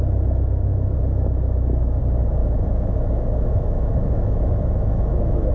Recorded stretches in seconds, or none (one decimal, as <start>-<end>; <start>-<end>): 0.0-0.7; 2.0-2.4